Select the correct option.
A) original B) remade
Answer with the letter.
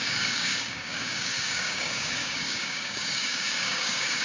B